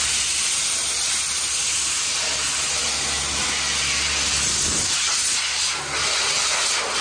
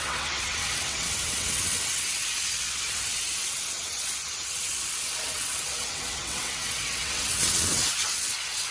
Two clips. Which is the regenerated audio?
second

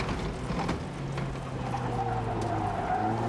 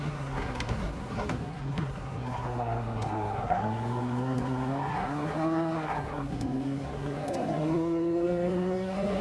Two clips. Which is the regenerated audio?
second